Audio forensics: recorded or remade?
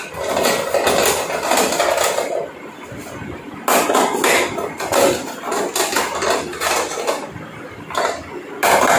recorded